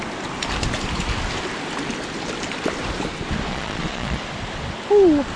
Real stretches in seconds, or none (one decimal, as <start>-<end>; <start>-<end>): 0.0-3.5; 4.2-5.4